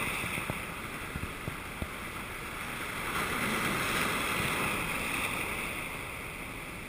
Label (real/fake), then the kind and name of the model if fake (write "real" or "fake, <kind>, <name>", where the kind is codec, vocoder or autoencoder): real